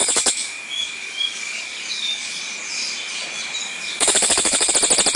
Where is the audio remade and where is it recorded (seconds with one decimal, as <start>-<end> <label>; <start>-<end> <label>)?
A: 0.0-2.4 remade; 2.4-3.6 recorded; 3.6-4.7 remade; 4.7-5.2 recorded